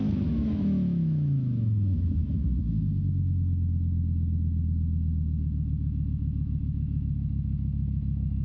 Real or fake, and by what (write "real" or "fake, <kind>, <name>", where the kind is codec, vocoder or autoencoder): fake, autoencoder, DAC-VAE